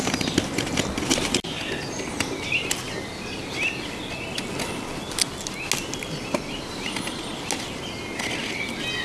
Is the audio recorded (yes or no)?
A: yes